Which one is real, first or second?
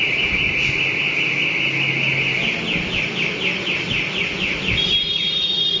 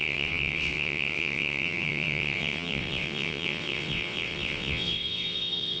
first